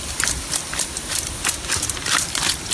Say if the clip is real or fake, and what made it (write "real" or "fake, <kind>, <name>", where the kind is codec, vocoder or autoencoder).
real